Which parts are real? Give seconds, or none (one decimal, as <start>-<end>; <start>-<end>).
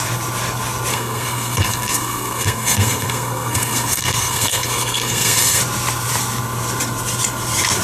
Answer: 0.0-0.9; 5.6-7.8